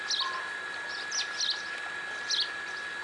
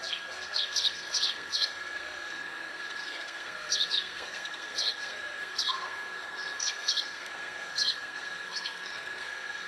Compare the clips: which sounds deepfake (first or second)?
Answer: second